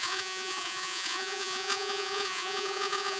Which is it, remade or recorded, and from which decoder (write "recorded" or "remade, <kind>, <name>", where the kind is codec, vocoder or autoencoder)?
remade, vocoder, Vocos